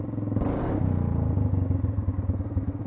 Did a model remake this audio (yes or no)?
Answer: no